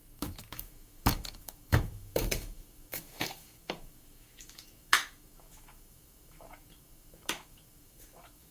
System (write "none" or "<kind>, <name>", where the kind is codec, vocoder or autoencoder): autoencoder, DAC-VAE